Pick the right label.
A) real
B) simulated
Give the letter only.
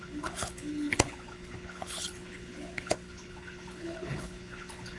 B